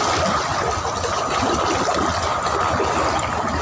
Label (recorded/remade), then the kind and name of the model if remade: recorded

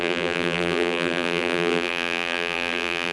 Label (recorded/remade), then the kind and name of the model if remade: remade, vocoder, BigVGAN v2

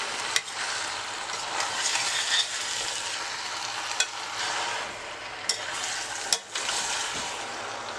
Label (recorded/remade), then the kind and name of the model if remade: recorded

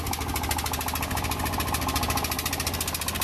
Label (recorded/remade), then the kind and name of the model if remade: recorded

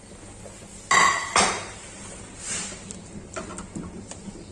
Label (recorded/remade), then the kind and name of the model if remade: recorded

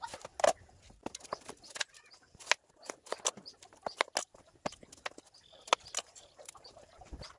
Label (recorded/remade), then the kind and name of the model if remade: recorded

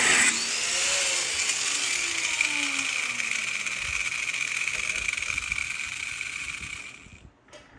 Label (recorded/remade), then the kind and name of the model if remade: recorded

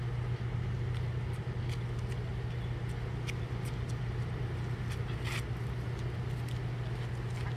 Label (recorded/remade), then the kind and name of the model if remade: recorded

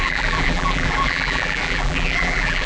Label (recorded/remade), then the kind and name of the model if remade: remade, vocoder, BigVGAN v2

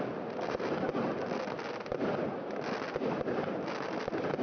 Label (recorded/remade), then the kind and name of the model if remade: recorded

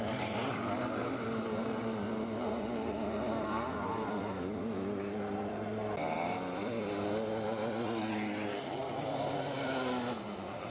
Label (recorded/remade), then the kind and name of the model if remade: remade, vocoder, BigVGAN v2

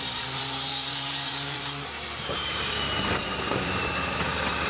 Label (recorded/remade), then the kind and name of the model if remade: remade, vocoder, BigVGAN v2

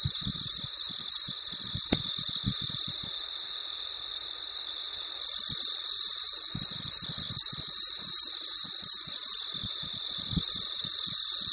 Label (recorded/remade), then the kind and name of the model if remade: recorded